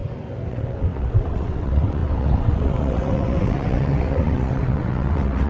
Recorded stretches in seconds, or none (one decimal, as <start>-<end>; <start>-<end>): 0.0-0.5